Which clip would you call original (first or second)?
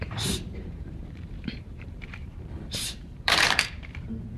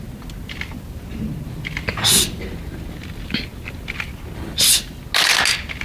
second